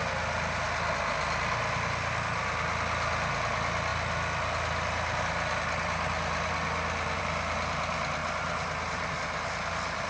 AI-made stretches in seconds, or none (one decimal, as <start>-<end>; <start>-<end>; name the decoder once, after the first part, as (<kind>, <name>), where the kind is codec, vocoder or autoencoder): none